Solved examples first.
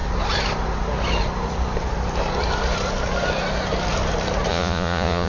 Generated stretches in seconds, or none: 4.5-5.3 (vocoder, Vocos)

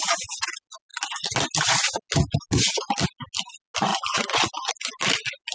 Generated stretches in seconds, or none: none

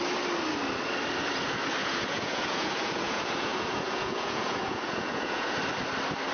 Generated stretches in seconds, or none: 1.8-5.6 (vocoder, Vocos)

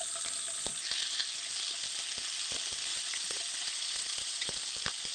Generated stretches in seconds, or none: 2.9-4.6 (vocoder, Vocos)